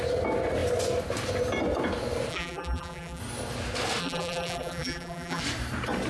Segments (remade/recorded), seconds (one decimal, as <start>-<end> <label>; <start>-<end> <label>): 0.0-2.3 recorded; 2.3-3.2 remade; 3.2-4.0 recorded; 4.0-5.4 remade; 5.4-6.1 recorded